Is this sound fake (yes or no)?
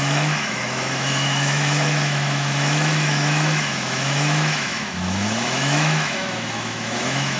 yes